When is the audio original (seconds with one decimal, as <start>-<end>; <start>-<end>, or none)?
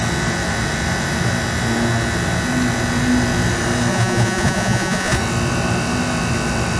0.0-3.9; 5.2-6.8